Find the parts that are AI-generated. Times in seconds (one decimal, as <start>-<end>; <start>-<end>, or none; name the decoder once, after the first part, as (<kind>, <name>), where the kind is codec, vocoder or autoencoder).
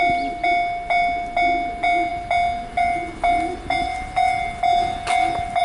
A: none